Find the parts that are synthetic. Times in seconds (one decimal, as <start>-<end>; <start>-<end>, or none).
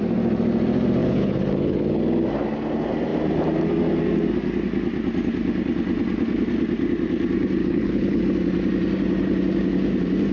1.0-2.0; 7.6-8.2